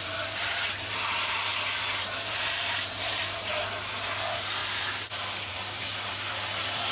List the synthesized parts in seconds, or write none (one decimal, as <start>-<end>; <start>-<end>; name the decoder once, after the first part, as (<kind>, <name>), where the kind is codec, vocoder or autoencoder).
0.0-4.6 (vocoder, BigVGAN v2); 5.5-6.9

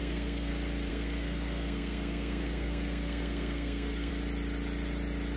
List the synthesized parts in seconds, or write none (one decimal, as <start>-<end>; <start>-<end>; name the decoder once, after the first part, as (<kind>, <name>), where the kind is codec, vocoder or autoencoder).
0.0-0.5 (codec, SNAC); 0.9-4.1

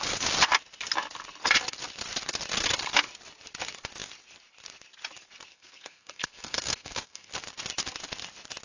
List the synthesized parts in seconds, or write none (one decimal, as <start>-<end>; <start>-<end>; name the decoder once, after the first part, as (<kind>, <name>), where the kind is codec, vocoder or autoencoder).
5.5-7.3 (codec, SNAC)

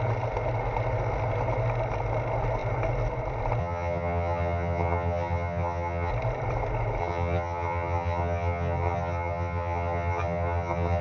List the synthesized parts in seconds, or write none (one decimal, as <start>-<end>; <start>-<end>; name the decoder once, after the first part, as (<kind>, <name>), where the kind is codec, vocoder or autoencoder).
3.6-6.1 (vocoder, HiFi-GAN); 7.0-11.0

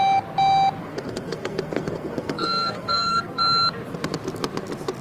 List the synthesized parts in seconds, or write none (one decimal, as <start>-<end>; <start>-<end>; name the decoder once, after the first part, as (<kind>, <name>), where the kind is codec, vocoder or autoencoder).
0.8-3.4 (codec, SNAC)

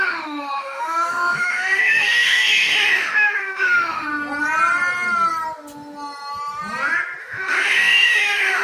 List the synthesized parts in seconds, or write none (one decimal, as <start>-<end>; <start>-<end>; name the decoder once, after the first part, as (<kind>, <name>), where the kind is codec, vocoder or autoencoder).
0.0-4.1 (autoencoder, DAC-VAE); 7.2-8.6